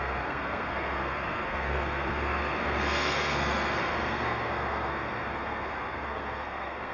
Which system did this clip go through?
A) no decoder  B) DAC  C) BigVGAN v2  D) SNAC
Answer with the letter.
D